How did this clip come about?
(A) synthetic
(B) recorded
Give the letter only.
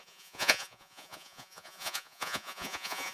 A